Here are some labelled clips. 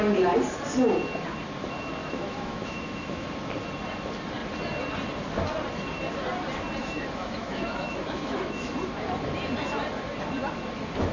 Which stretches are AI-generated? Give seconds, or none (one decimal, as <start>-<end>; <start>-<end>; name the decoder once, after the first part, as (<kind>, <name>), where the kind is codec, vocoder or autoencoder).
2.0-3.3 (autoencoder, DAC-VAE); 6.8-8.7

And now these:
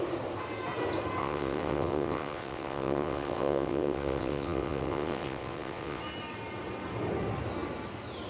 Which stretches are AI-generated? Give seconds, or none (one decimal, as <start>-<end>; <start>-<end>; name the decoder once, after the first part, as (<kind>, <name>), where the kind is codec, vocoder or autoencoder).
1.2-6.0 (vocoder, WaveNeXt)

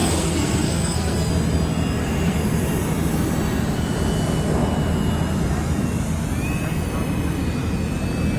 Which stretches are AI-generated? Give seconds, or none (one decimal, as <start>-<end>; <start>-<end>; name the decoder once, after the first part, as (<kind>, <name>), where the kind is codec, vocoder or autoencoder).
0.0-1.3 (codec, SNAC); 2.0-2.6

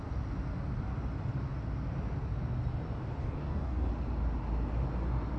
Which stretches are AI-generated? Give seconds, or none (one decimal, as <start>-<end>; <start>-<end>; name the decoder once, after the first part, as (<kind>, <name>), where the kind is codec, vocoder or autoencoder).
3.2-3.9 (codec, DAC)